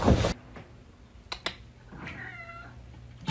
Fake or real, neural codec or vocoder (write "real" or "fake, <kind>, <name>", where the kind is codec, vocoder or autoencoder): real